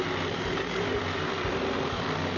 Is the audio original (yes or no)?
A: yes